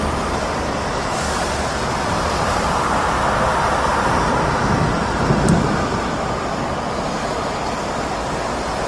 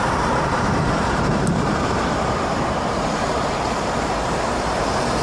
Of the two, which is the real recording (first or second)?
first